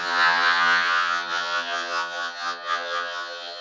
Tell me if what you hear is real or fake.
fake